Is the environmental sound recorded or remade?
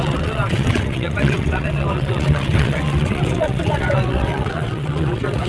remade